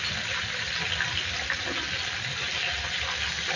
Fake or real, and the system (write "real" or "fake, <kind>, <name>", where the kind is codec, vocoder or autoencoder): real